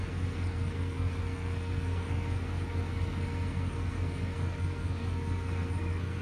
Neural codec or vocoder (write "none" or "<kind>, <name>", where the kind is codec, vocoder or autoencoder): codec, SNAC